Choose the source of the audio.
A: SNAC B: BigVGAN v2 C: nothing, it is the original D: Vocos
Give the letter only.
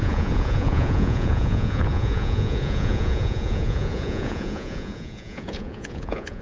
D